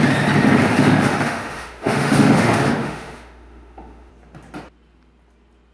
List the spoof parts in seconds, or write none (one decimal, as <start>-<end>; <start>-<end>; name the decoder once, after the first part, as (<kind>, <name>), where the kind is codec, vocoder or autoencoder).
0.7-4.1 (autoencoder, DAC-VAE)